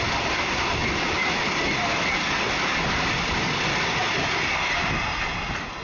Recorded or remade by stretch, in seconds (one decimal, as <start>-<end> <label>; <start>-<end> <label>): 0.0-5.8 recorded